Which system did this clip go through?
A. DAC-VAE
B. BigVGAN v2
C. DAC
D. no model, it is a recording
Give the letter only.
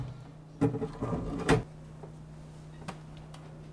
D